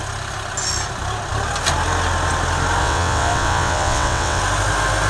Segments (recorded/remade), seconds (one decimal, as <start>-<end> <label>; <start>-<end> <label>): 0.0-2.8 recorded; 2.8-4.4 remade; 4.4-5.1 recorded